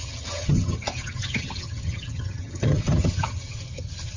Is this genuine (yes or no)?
no